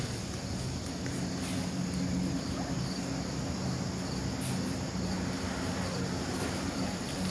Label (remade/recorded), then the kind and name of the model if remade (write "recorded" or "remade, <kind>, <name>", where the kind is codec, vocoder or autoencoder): recorded